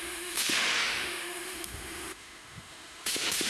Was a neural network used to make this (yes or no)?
yes